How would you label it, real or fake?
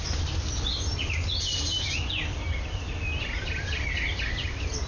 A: real